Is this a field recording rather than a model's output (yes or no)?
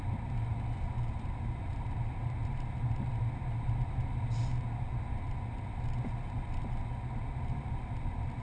yes